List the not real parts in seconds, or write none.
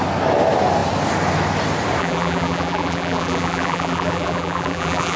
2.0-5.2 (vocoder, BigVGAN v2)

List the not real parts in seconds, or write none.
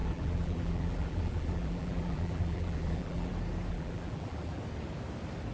0.0-3.3 (vocoder, BigVGAN v2); 3.7-4.6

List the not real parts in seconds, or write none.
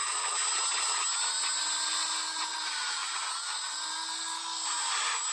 none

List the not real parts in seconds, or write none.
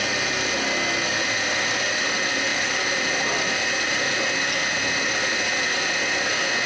2.5-3.1 (vocoder, BigVGAN v2)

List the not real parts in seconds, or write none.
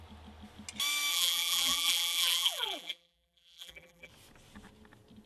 1.1-4.1 (vocoder, BigVGAN v2)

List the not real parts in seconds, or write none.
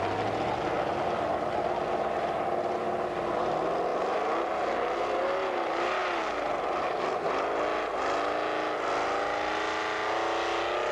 none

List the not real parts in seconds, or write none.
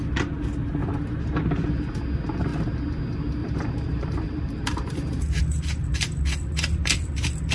0.8-1.4 (vocoder, BigVGAN v2); 3.4-5.4